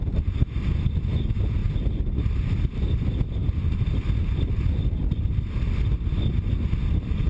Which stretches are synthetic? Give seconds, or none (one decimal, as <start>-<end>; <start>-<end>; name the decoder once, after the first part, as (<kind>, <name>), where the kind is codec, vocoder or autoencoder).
none